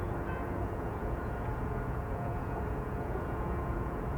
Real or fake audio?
fake